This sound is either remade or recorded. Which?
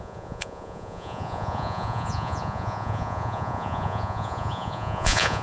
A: remade